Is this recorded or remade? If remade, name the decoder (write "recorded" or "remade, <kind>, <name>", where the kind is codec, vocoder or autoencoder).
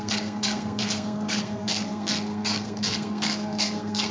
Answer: remade, codec, SNAC